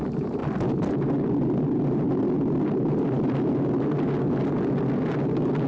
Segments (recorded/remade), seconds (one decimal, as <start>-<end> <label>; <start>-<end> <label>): 0.0-5.7 recorded